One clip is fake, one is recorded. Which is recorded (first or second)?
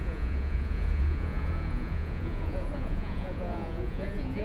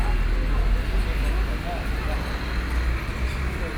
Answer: second